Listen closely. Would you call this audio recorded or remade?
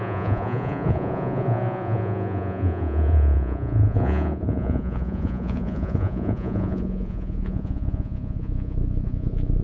remade